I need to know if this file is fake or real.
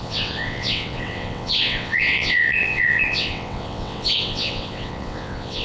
fake